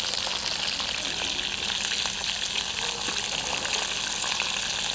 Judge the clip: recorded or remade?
recorded